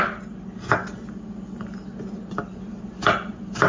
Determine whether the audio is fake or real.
real